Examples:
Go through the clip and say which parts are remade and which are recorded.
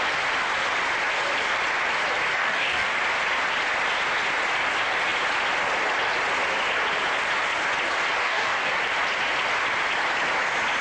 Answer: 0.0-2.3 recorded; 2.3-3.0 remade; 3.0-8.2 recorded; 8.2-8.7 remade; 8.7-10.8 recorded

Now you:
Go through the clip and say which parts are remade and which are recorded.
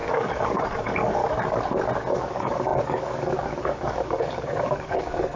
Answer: 0.0-1.2 remade; 1.2-2.1 recorded; 2.1-5.4 remade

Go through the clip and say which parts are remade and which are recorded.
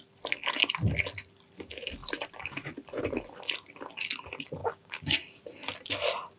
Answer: 0.0-4.6 recorded; 4.6-5.4 remade; 5.4-6.4 recorded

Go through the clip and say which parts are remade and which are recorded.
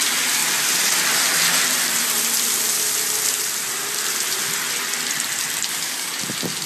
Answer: 0.0-5.7 recorded; 5.7-6.2 remade; 6.2-6.7 recorded